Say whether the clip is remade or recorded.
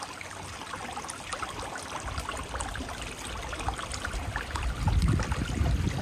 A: recorded